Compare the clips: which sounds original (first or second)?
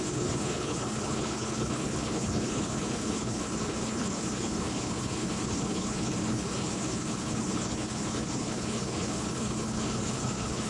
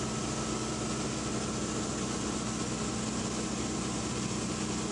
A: second